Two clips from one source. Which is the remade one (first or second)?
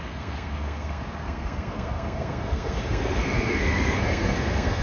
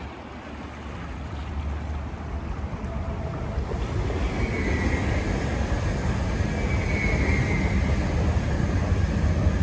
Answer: first